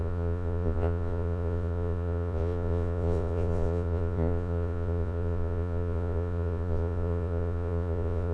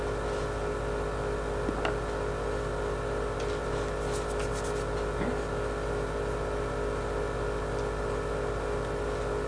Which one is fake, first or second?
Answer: first